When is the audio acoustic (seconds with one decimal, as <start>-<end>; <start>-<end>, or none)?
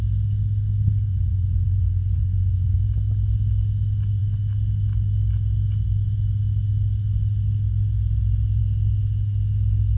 0.0-1.1; 2.8-10.0